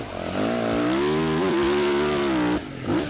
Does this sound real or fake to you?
real